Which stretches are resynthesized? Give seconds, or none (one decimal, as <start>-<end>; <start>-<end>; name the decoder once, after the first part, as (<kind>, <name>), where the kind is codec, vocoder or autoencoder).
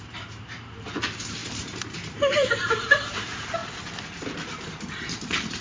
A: 0.0-3.6 (vocoder, BigVGAN v2); 4.9-5.6